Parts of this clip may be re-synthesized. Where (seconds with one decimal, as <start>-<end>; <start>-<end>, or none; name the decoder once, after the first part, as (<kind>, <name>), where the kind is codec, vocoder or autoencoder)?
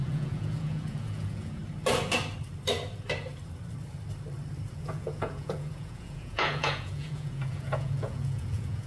0.0-1.6 (vocoder, Vocos); 4.7-8.9